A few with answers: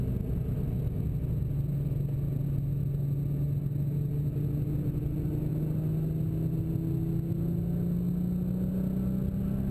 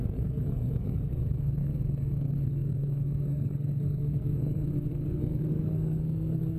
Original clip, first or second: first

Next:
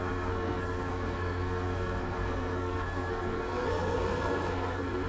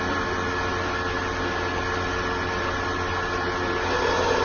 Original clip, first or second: second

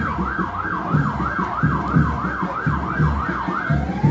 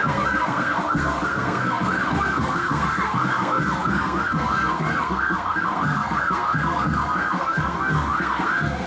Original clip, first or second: first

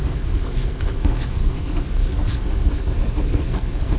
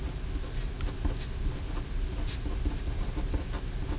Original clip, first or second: second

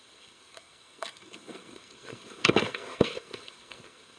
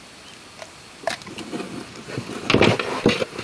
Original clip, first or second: second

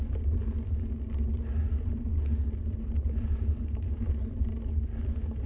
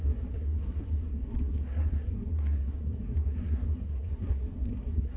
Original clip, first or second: first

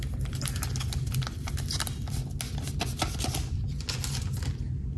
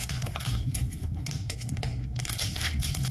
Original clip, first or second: first